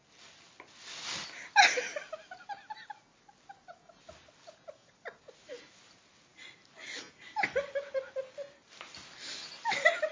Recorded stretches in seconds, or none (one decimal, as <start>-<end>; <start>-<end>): 0.0-10.1